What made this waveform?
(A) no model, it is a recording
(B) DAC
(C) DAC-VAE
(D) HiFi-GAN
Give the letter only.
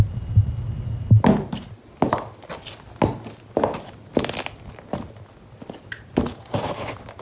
A